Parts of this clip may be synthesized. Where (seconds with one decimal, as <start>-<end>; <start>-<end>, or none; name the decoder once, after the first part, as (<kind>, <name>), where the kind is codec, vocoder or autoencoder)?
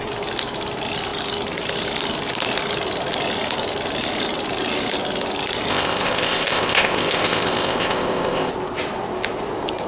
5.7-8.5 (codec, ZipCodec)